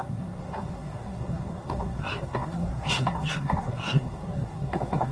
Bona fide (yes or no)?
no